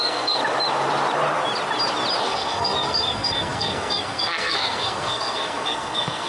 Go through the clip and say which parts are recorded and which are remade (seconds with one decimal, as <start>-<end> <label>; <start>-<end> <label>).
0.0-0.4 remade; 0.4-2.2 recorded; 2.2-6.3 remade